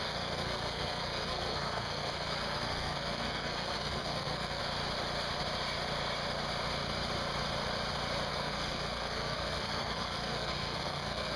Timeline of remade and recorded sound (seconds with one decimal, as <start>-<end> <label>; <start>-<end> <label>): 0.0-4.6 remade; 4.6-8.3 recorded; 8.3-11.4 remade